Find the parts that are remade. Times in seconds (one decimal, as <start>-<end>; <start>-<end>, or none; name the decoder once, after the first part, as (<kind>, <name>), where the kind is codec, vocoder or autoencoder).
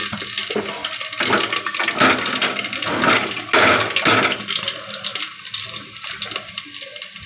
none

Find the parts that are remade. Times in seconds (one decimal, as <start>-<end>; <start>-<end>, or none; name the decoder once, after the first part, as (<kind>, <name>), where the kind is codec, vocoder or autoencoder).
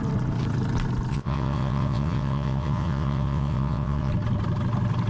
1.1-4.1 (vocoder, WaveNeXt)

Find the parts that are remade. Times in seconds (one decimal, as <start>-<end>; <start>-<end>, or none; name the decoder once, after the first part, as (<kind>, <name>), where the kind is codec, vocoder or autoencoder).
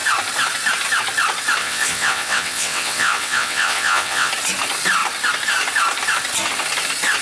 1.6-4.3 (vocoder, WaveNeXt)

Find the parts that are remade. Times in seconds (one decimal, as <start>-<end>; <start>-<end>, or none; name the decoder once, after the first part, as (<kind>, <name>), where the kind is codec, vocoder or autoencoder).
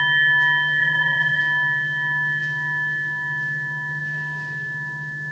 0.8-1.4 (vocoder, WaveNeXt)